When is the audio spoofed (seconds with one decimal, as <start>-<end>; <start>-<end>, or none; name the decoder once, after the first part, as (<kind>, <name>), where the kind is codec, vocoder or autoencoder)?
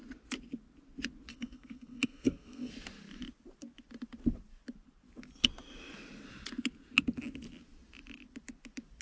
1.3-2.7 (codec, SNAC)